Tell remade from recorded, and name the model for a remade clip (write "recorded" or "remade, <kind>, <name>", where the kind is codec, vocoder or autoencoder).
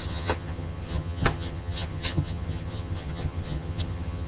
remade, vocoder, HiFi-GAN